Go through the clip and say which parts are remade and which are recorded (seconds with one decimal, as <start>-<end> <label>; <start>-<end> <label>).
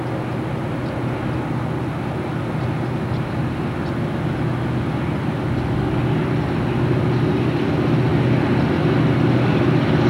0.0-10.1 recorded